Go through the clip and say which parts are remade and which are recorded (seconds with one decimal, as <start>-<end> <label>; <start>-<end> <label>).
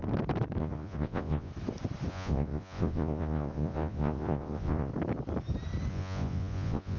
0.0-0.6 recorded; 0.6-1.5 remade; 1.5-2.1 recorded; 2.1-4.9 remade; 4.9-5.9 recorded; 5.9-7.0 remade